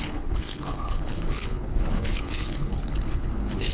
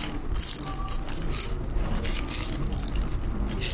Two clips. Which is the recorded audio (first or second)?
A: second